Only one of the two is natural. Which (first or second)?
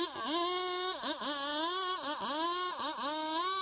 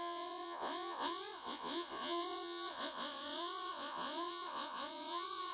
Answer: first